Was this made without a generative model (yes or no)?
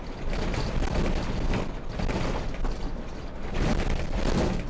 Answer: yes